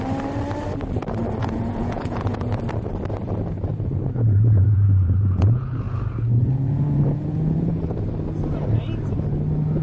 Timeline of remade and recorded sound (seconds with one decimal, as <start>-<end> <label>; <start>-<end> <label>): 0.0-1.4 recorded; 1.4-2.6 remade; 2.6-3.7 recorded; 3.7-7.8 remade; 7.8-9.8 recorded